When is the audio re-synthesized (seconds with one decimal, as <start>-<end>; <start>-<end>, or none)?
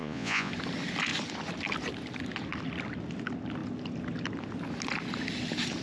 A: 0.0-0.5